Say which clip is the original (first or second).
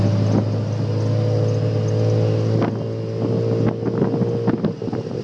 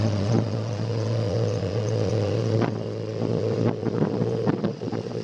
first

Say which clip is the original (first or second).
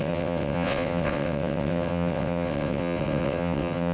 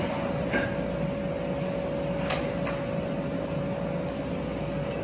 second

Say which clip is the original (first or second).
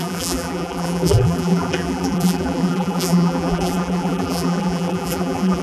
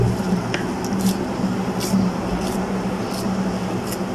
second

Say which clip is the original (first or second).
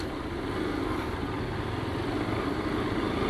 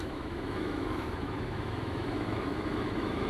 first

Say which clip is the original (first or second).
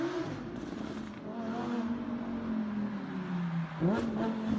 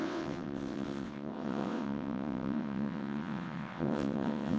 first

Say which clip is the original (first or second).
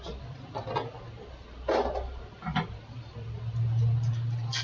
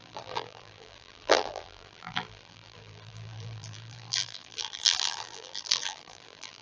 first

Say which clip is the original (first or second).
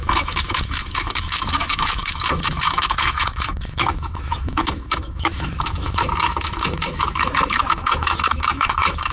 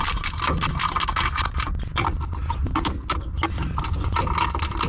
second